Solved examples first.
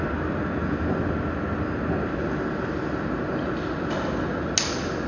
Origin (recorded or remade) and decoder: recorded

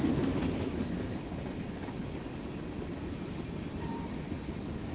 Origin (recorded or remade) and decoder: recorded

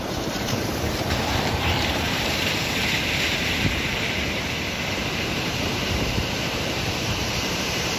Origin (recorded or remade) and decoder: remade, vocoder, BigVGAN v2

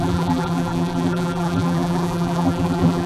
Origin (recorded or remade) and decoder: remade, vocoder, BigVGAN v2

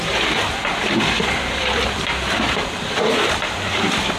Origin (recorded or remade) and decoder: remade, vocoder, BigVGAN v2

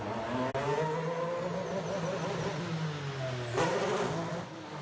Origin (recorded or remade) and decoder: recorded